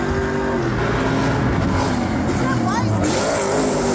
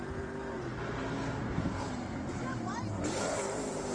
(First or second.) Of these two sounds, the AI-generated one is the second